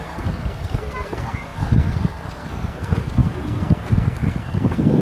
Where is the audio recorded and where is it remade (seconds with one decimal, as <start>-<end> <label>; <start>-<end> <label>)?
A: 0.0-5.0 remade